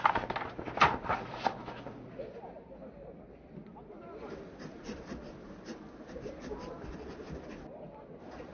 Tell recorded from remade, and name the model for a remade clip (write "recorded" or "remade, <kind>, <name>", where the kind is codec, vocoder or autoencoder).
recorded